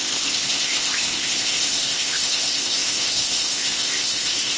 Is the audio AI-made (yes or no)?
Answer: yes